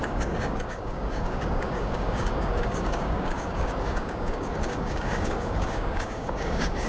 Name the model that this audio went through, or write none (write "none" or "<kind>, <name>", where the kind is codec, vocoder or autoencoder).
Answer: codec, DAC